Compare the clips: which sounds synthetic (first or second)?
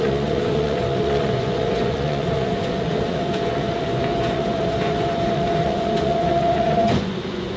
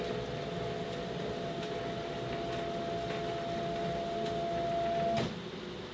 first